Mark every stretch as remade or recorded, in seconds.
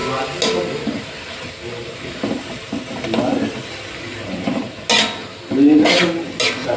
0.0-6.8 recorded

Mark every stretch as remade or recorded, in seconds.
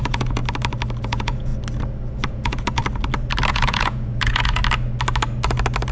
0.0-0.4 remade; 0.4-1.0 recorded; 1.0-1.5 remade; 1.5-2.3 recorded; 2.3-2.8 remade; 2.8-3.5 recorded; 3.5-4.6 remade; 4.6-5.9 recorded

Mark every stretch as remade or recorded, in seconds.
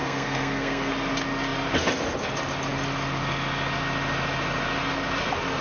0.0-0.9 remade; 0.9-5.6 recorded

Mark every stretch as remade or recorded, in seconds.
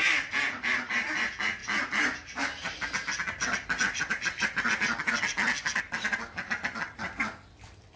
0.0-8.0 recorded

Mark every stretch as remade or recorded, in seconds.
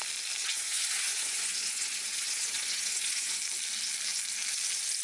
0.0-0.4 recorded; 0.4-3.4 remade; 3.4-5.0 recorded